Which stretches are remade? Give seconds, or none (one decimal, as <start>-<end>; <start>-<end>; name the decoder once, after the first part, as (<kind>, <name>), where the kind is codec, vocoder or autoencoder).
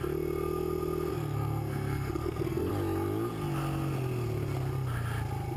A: 1.1-2.7 (codec, SNAC)